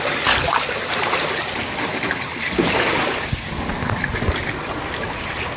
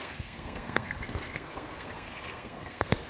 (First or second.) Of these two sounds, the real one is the first